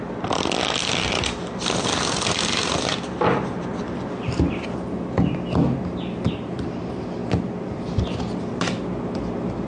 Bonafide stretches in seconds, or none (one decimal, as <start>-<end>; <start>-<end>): 0.0-9.7